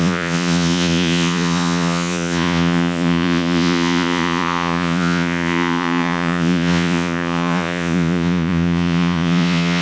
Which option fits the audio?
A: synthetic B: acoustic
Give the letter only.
A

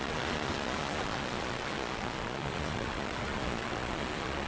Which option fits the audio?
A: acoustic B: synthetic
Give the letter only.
B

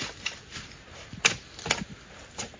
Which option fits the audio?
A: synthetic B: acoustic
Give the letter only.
B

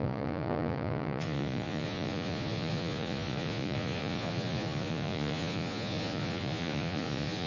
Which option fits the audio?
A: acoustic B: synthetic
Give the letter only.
B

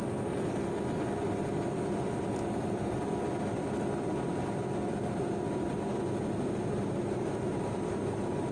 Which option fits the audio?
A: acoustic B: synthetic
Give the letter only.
A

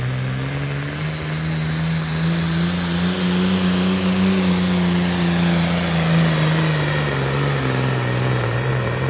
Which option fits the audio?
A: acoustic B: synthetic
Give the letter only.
A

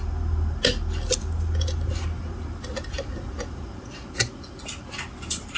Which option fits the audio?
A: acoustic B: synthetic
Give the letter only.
A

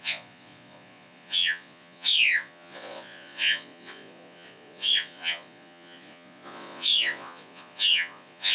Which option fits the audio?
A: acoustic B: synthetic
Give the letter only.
B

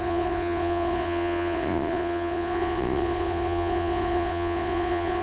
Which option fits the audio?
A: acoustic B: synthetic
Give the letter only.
B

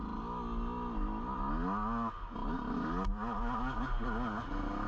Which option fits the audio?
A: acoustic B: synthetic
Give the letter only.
A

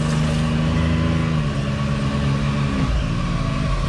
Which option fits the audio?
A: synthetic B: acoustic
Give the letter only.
B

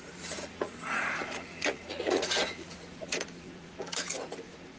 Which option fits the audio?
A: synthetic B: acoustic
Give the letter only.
A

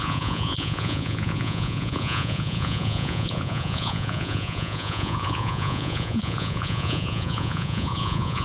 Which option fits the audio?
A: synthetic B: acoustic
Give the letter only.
A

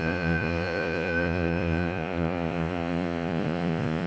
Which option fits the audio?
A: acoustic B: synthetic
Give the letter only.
B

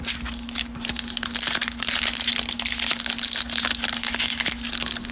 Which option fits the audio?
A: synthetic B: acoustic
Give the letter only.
B